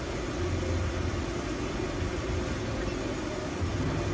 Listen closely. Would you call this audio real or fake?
real